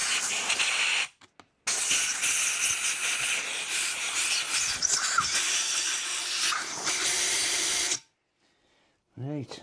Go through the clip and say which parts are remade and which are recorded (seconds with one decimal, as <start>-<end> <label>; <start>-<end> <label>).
0.0-9.6 recorded